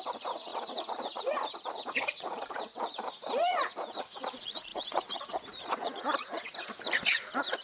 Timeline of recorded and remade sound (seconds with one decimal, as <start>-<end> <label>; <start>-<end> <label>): 0.0-7.6 remade